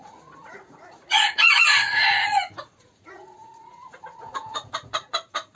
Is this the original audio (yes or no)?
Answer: no